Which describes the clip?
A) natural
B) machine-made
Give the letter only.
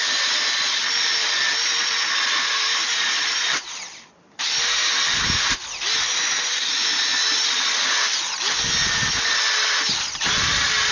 B